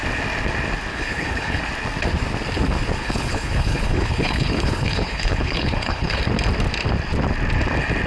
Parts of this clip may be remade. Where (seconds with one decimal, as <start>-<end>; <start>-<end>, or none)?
0.9-1.6; 3.0-6.2